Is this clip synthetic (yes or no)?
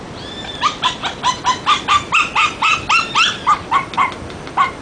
no